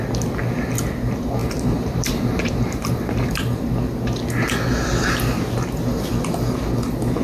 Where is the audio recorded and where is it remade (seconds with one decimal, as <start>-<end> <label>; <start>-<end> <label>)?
0.0-1.4 recorded; 1.4-3.7 remade; 3.7-7.2 recorded